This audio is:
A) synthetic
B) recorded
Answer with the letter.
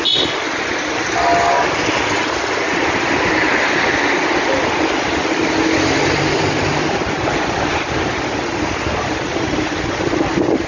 B